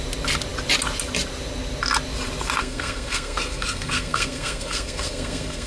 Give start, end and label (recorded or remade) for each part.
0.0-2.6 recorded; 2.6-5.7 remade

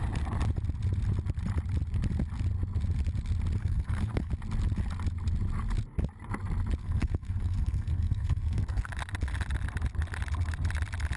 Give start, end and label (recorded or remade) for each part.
0.0-3.6 recorded; 3.6-4.3 remade; 4.3-6.8 recorded; 6.8-8.9 remade; 8.9-11.2 recorded

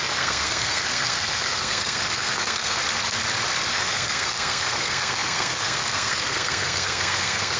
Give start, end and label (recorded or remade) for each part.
0.0-2.8 remade; 2.8-3.7 recorded; 3.7-7.6 remade

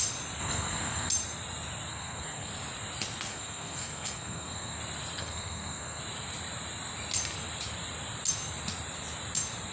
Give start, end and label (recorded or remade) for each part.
0.0-0.4 recorded; 0.4-1.1 remade; 1.1-1.9 recorded; 1.9-2.5 remade; 2.5-3.3 recorded; 3.3-4.8 remade; 4.8-5.2 recorded; 5.2-6.0 remade; 6.0-9.7 recorded

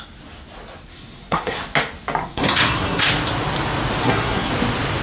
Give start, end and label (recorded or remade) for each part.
0.0-0.9 recorded; 0.9-1.6 remade; 1.6-2.2 recorded; 2.2-3.0 remade; 3.0-4.0 recorded; 4.0-4.5 remade; 4.5-5.0 recorded

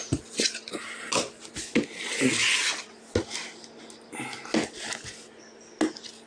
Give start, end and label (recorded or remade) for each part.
0.0-6.3 recorded